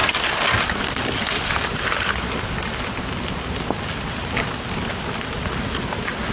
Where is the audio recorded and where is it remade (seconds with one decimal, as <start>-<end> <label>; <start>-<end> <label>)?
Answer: 0.0-6.3 recorded